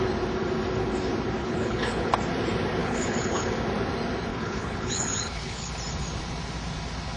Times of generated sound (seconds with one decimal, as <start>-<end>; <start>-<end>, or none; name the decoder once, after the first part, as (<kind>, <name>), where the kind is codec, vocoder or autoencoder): 1.4-2.1 (codec, HILCodec); 2.8-3.5; 4.3-5.7